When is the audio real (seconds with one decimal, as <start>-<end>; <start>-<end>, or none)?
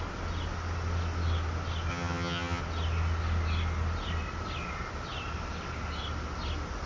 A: 0.0-1.9; 2.6-6.9